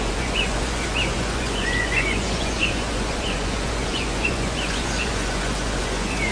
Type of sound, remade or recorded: remade